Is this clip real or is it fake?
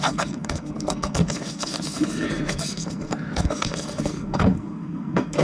fake